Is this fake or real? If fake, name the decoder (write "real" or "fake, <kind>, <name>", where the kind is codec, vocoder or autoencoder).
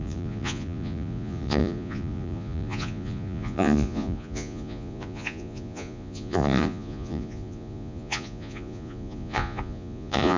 fake, vocoder, Vocos